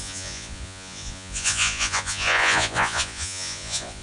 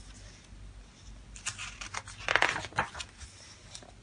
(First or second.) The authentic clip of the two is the second